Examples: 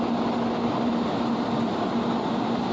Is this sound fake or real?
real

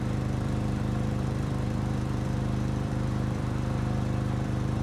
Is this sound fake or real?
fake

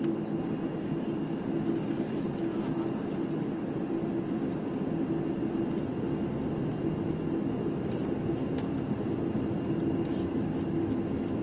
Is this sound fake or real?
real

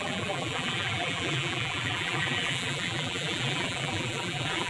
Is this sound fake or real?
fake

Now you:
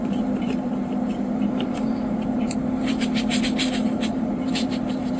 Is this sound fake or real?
fake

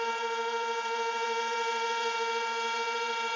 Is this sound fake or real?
fake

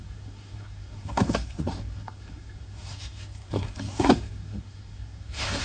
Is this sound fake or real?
fake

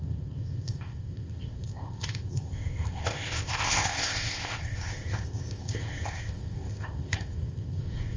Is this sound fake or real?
fake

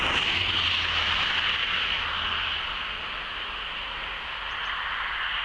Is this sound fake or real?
real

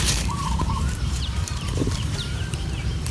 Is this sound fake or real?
fake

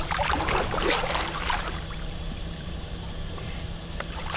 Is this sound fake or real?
fake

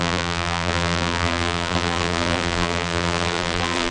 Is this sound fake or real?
fake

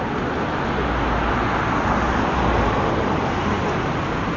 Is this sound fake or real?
real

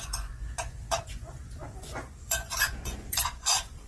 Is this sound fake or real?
fake